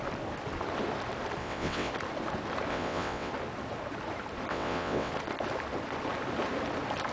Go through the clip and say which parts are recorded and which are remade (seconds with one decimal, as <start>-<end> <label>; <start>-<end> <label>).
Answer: 0.0-1.4 recorded; 1.4-1.9 remade; 1.9-2.7 recorded; 2.7-3.3 remade; 3.3-4.5 recorded; 4.5-5.1 remade; 5.1-7.1 recorded